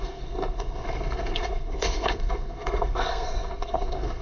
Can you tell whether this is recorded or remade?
remade